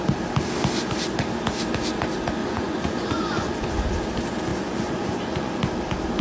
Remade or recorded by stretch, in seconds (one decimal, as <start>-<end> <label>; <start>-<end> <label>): 0.0-2.4 recorded; 2.4-3.9 remade; 3.9-4.5 recorded; 4.5-5.6 remade; 5.6-6.2 recorded